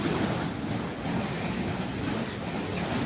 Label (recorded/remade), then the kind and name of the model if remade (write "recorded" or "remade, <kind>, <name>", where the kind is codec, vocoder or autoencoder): recorded